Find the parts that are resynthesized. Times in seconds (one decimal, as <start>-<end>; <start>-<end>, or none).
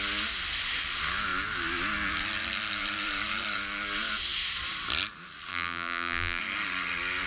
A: 5.5-6.4